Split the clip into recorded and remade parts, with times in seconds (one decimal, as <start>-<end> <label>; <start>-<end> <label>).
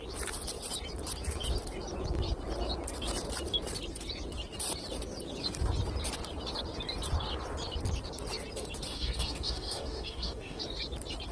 0.0-8.9 recorded; 8.9-10.6 remade; 10.6-11.3 recorded